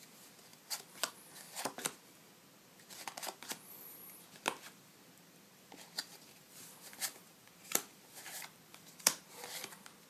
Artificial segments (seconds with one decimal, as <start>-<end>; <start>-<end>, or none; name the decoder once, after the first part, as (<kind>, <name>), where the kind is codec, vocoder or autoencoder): 0.5-1.1 (vocoder, BigVGAN v2); 6.0-9.2